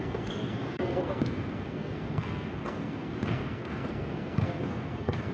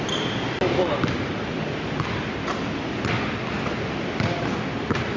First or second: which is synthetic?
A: first